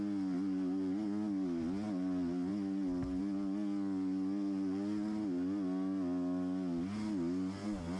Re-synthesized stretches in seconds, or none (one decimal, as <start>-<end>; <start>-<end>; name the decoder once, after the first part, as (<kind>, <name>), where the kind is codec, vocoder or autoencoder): none